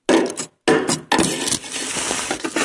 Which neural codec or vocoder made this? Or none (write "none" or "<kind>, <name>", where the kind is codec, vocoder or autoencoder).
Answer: none